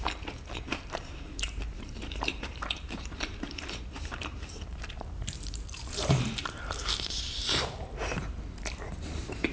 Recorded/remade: remade